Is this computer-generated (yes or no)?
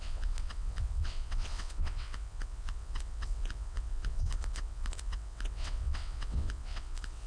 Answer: yes